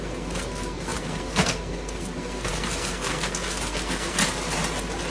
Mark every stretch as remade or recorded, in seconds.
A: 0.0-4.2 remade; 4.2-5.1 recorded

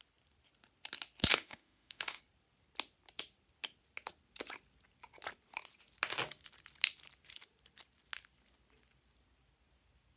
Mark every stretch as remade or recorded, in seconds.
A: 0.0-1.3 recorded; 1.3-2.2 remade; 2.2-10.2 recorded

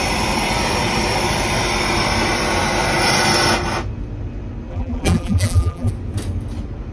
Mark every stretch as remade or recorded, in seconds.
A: 0.0-4.7 recorded; 4.7-5.9 remade; 5.9-6.9 recorded

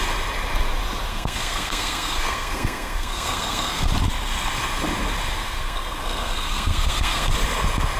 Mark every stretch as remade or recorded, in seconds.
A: 0.0-1.1 recorded; 1.1-3.9 remade; 3.9-5.4 recorded; 5.4-7.3 remade; 7.3-8.0 recorded

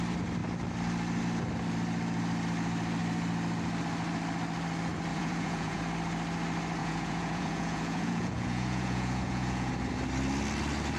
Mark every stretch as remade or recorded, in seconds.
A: 0.0-5.1 recorded; 5.1-5.8 remade; 5.8-6.8 recorded; 6.8-9.7 remade; 9.7-11.0 recorded

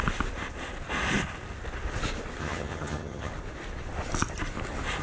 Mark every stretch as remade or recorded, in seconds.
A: 0.0-2.4 recorded; 2.4-3.3 remade; 3.3-5.0 recorded

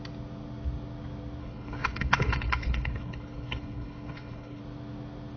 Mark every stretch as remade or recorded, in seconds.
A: 0.0-1.4 recorded; 1.4-4.6 remade; 4.6-5.4 recorded

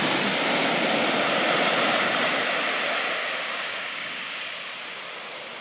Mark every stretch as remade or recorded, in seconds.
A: 0.0-3.2 recorded; 3.2-4.4 remade; 4.4-5.6 recorded